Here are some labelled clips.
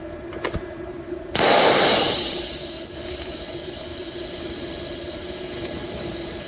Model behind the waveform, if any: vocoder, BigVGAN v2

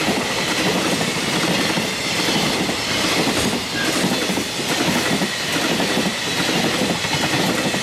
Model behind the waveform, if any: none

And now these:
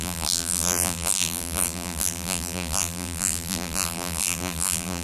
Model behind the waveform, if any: vocoder, BigVGAN v2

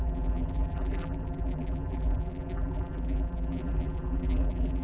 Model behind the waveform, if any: vocoder, BigVGAN v2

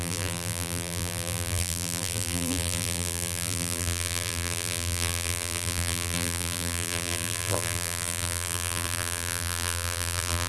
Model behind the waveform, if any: vocoder, BigVGAN v2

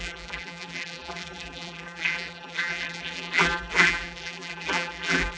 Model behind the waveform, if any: vocoder, BigVGAN v2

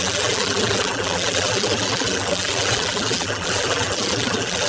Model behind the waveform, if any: vocoder, BigVGAN v2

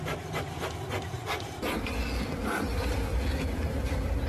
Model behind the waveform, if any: none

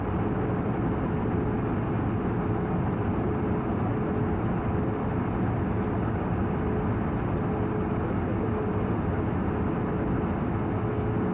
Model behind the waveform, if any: none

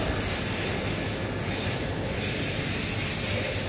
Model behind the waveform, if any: none